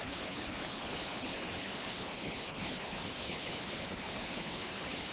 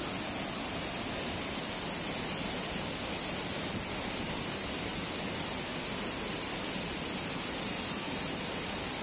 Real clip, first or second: second